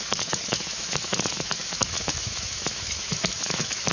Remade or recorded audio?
remade